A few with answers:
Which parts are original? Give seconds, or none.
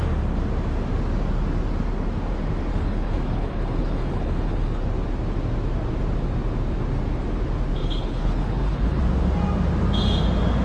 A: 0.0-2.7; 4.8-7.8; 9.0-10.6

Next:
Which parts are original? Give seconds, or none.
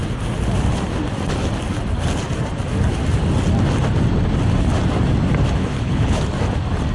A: 0.0-5.6; 6.2-6.9